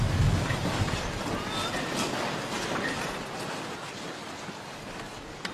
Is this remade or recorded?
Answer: recorded